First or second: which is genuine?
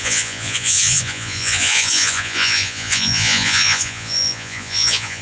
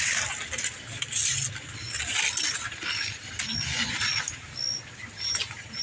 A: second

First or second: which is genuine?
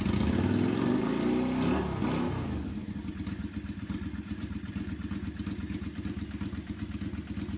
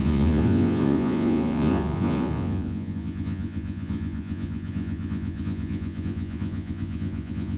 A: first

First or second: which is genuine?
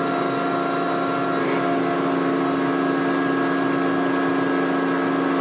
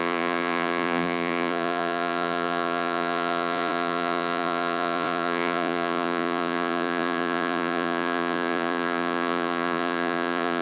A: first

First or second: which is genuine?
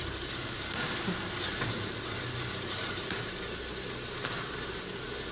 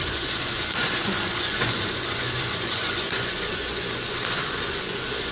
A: first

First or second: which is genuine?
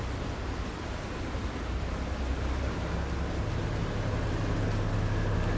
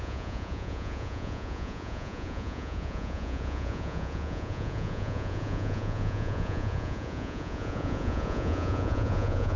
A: first